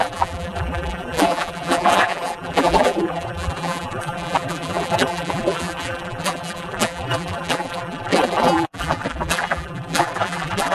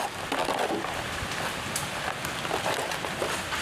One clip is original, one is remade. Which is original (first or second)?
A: second